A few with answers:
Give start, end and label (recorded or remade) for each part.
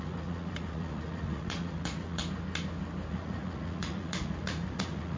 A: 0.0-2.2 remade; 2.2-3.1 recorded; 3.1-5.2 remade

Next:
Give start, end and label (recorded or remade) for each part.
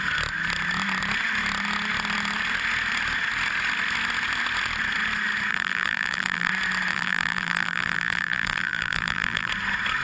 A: 0.0-5.5 recorded; 5.5-6.5 remade; 6.5-6.9 recorded; 6.9-9.5 remade; 9.5-10.0 recorded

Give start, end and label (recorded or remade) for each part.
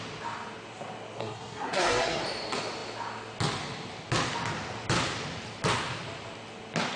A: 0.0-1.2 recorded; 1.2-2.2 remade; 2.2-7.0 recorded